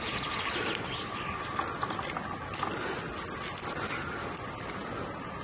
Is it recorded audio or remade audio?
recorded